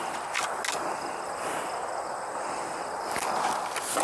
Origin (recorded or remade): recorded